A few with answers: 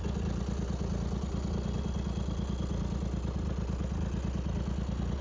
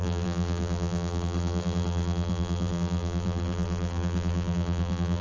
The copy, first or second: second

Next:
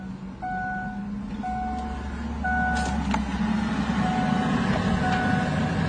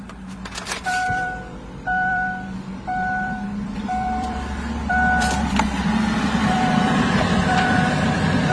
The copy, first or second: second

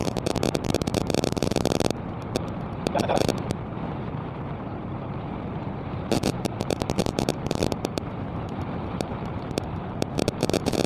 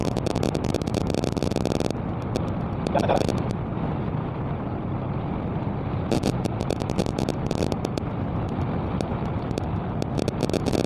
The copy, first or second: first